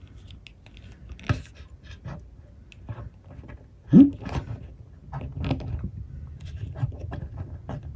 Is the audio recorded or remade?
recorded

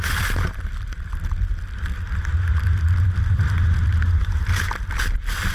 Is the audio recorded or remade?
recorded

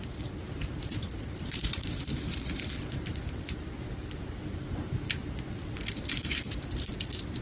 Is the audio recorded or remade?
remade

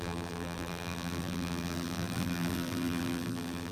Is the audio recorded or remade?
remade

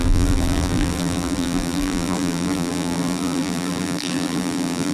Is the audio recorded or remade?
remade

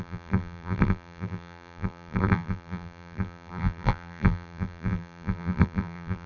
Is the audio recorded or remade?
remade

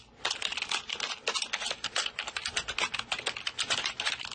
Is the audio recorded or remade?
recorded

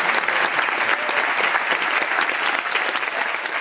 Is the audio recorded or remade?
recorded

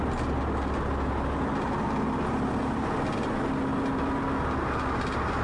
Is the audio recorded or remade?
recorded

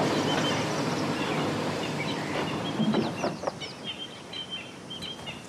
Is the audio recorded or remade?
remade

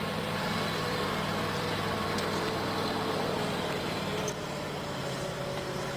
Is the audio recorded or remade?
remade